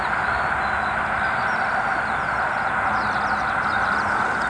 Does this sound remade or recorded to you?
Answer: recorded